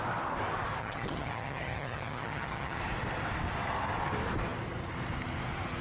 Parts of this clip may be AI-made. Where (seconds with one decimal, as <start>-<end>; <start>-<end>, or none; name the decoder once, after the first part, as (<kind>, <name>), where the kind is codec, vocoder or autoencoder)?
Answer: 0.8-2.8 (vocoder, HiFi-GAN)